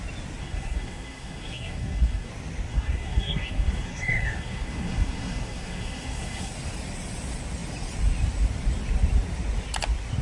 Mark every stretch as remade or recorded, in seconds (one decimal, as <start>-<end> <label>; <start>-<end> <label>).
0.0-0.4 recorded; 0.4-2.3 remade; 2.3-2.7 recorded; 2.7-6.5 remade; 6.5-10.2 recorded